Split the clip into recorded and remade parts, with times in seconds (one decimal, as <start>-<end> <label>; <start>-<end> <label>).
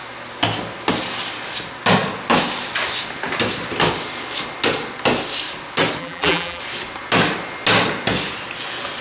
0.0-6.0 recorded; 6.0-6.6 remade; 6.6-9.0 recorded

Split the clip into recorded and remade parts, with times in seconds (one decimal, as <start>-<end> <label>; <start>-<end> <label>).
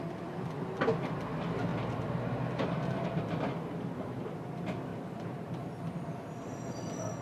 0.0-1.7 recorded; 1.7-3.2 remade; 3.2-4.9 recorded; 4.9-5.5 remade; 5.5-7.2 recorded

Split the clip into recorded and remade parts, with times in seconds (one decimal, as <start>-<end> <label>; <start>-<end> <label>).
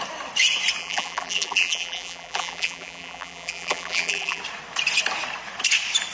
0.0-0.8 recorded; 0.8-4.4 remade; 4.4-6.1 recorded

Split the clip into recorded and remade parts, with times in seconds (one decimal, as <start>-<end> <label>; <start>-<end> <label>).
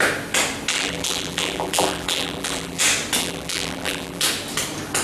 0.0-0.7 recorded; 0.7-2.8 remade; 2.8-3.2 recorded; 3.2-4.2 remade; 4.2-5.0 recorded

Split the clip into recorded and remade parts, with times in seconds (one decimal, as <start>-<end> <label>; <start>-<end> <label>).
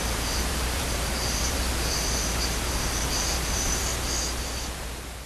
0.0-3.9 remade; 3.9-5.3 recorded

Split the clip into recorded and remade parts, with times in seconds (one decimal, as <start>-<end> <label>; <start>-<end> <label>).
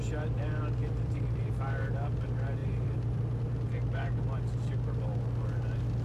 0.0-0.8 recorded; 0.8-1.5 remade; 1.5-2.6 recorded; 2.6-3.2 remade; 3.2-6.0 recorded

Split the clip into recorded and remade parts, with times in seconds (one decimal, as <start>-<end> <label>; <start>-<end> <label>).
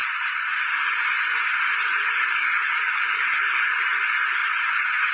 0.0-0.7 remade; 0.7-4.4 recorded; 4.4-5.1 remade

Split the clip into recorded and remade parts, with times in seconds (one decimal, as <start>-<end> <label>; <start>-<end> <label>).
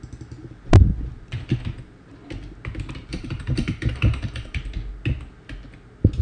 0.0-3.1 recorded; 3.1-4.6 remade; 4.6-6.2 recorded